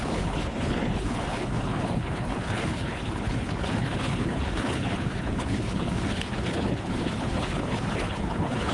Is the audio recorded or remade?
remade